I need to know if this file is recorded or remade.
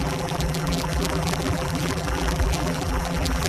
remade